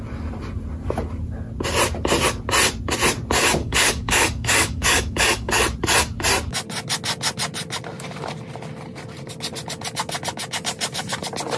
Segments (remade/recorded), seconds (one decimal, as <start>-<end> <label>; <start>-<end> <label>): 0.0-3.6 recorded; 3.6-5.6 remade; 5.6-11.6 recorded